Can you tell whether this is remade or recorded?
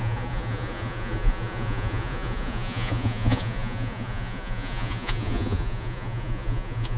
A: remade